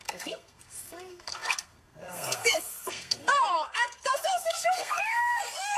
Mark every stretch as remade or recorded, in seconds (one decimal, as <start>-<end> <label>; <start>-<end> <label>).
0.0-5.8 remade